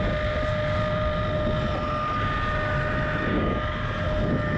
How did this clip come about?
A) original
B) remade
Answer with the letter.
A